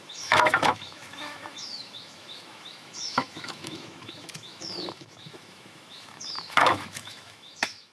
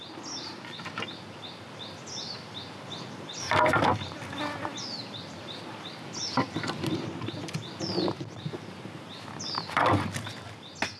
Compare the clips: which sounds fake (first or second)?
first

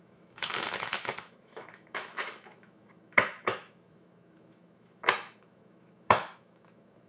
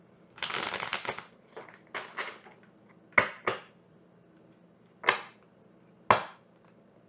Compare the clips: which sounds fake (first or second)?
first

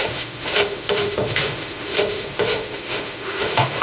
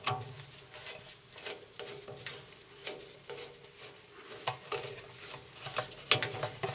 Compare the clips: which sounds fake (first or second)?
first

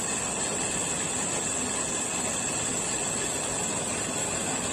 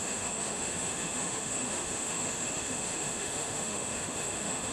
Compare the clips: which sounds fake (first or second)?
second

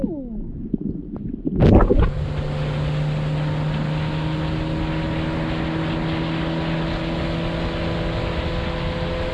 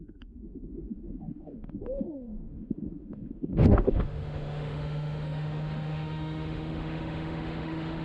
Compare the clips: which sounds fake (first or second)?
second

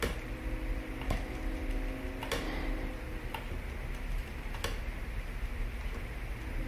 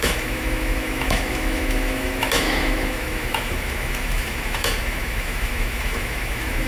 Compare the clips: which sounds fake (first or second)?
second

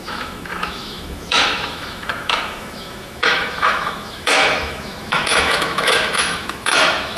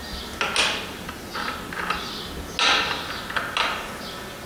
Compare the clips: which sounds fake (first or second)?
first